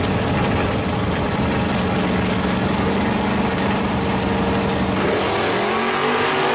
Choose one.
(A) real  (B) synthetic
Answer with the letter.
A